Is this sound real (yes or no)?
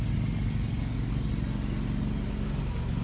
yes